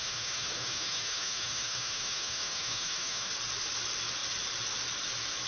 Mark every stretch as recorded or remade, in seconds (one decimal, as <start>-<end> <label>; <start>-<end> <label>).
0.0-3.3 remade; 3.3-5.5 recorded